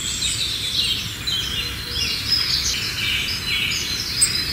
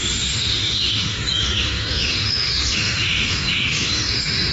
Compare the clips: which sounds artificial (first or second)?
second